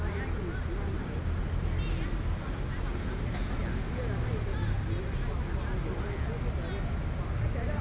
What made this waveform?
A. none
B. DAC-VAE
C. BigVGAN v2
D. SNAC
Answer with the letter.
A